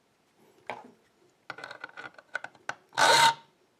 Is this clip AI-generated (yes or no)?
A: no